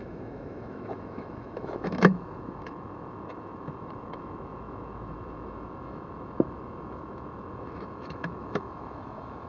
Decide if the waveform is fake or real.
fake